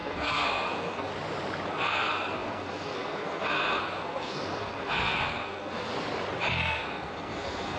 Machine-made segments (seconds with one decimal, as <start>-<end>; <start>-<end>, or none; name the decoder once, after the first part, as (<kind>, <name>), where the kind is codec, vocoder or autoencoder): 0.0-1.1 (codec, SNAC); 1.7-5.9; 6.5-7.8